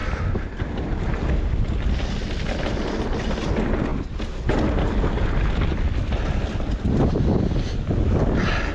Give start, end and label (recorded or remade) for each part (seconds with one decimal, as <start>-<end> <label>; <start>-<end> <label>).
0.0-8.7 recorded